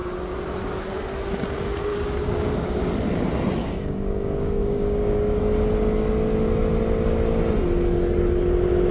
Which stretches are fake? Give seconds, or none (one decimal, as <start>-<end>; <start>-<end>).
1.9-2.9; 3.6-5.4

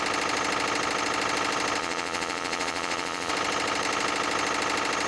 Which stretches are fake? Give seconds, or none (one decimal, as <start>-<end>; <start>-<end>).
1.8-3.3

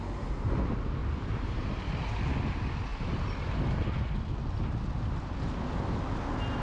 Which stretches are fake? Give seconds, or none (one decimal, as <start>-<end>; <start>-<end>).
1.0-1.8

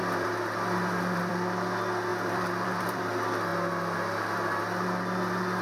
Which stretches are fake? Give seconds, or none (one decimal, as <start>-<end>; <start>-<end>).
0.0-1.3; 2.1-3.1